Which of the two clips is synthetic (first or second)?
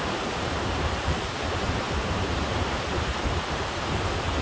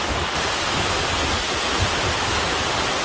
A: first